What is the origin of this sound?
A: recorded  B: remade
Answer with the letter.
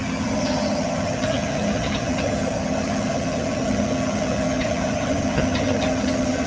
B